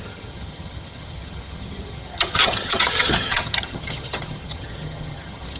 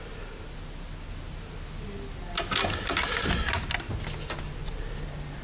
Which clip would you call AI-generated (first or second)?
first